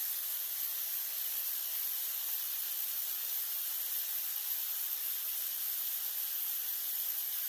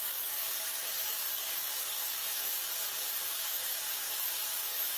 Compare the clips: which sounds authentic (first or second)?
first